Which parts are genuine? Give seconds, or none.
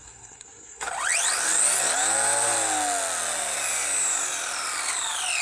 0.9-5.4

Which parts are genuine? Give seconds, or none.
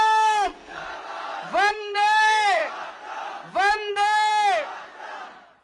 0.8-1.7; 2.6-3.9; 4.3-5.6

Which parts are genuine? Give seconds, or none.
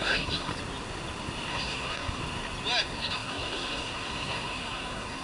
0.5-1.5; 2.2-2.8